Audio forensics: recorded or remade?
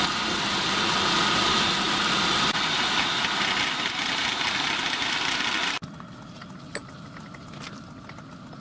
recorded